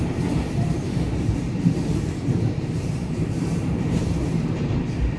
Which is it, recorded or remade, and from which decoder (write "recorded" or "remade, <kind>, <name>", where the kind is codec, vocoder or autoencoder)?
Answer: remade, vocoder, BigVGAN v2